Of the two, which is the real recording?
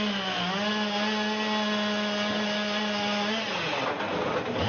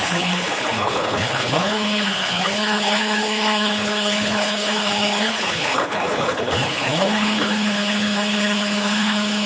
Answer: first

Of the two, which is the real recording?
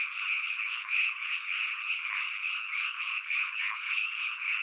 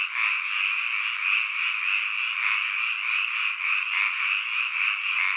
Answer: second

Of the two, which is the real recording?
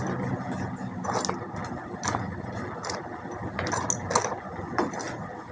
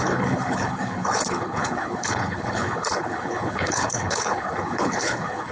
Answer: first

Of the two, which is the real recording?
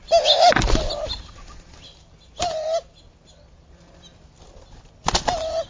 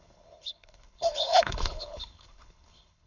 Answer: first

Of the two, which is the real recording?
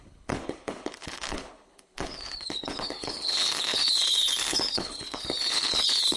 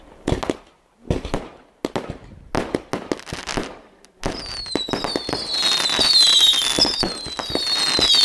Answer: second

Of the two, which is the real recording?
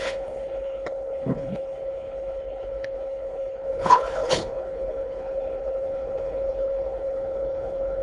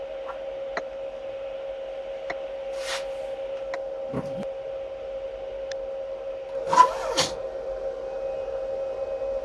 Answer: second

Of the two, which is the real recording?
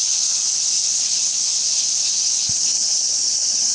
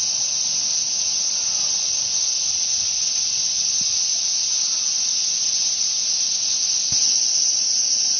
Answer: second